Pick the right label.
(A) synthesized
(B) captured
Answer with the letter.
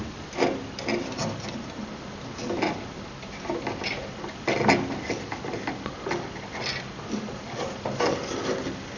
B